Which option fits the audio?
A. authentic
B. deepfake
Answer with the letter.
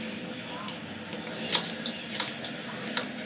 A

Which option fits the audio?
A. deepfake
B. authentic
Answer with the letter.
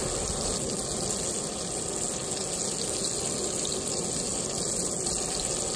B